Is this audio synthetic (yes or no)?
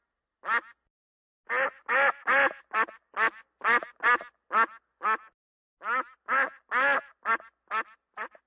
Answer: no